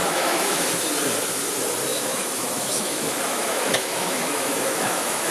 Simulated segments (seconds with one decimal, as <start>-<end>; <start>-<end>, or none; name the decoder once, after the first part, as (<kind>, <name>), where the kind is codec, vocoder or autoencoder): 0.0-0.7 (autoencoder, DAC-VAE); 1.9-5.3